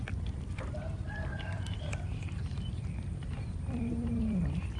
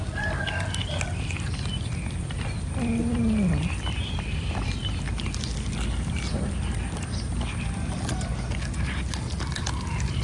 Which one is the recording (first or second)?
second